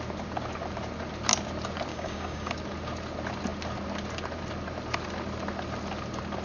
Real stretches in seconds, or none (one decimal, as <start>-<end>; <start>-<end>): 0.0-1.9; 2.5-6.4